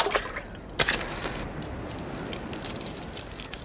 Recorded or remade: remade